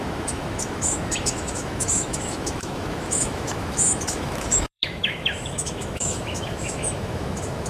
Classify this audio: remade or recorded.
remade